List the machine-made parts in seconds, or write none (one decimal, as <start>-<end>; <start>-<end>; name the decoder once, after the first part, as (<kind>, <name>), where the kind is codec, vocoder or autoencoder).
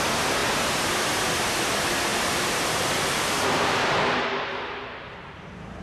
2.1-5.8 (vocoder, BigVGAN v2)